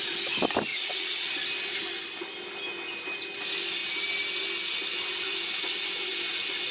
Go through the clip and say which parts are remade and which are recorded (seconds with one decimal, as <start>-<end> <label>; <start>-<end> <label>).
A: 0.0-0.7 recorded; 0.7-1.3 remade; 1.3-6.7 recorded